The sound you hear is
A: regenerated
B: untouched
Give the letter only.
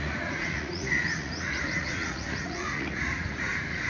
A